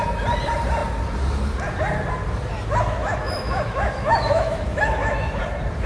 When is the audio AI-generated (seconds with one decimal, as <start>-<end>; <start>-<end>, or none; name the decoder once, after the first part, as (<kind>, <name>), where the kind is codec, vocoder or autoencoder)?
3.0-5.4 (autoencoder, DAC-VAE)

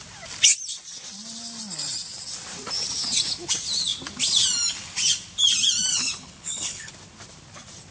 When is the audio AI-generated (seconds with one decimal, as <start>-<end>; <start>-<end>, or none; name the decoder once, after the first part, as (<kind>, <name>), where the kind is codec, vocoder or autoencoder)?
5.9-6.9 (codec, HILCodec)

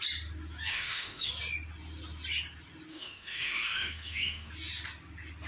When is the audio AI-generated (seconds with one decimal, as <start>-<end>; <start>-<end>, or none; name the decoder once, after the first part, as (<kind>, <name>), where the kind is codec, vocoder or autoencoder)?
0.7-1.3 (autoencoder, DAC-VAE); 2.9-4.5

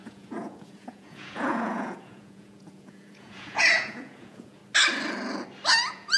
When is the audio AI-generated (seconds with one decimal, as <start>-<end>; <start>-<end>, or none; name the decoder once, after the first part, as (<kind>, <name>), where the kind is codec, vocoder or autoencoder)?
0.0-4.6 (vocoder, Vocos); 5.8-6.2

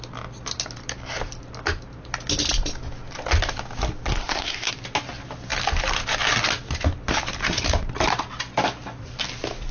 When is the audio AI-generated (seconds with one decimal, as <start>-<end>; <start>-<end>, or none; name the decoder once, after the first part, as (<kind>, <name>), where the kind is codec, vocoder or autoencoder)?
4.1-4.7 (codec, SNAC)